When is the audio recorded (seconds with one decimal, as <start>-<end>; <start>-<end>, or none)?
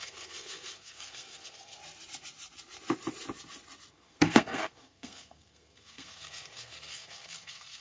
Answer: 1.8-3.9